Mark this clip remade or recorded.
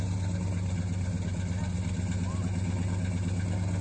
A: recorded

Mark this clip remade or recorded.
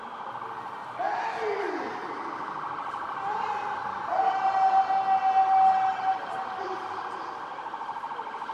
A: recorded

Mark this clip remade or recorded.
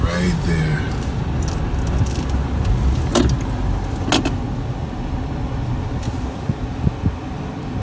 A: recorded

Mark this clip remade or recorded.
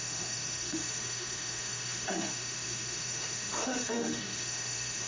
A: remade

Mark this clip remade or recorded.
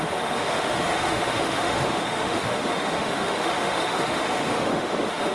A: remade